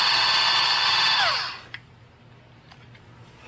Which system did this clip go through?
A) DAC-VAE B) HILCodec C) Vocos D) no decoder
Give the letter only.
D